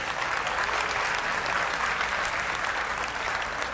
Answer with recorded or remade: recorded